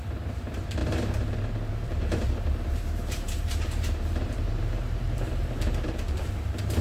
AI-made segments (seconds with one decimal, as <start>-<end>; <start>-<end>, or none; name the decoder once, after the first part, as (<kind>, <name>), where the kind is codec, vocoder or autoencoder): 0.0-6.8 (vocoder, BigVGAN v2)